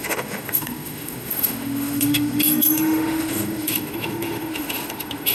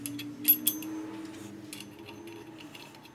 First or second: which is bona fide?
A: second